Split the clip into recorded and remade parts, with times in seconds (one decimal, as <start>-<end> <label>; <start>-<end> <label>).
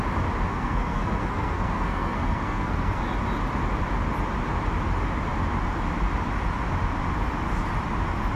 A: 0.0-0.5 recorded; 0.5-3.0 remade; 3.0-8.4 recorded